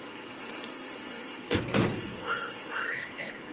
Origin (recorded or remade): remade